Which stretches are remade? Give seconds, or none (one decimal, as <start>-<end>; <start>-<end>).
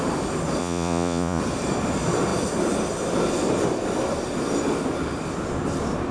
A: 0.6-1.4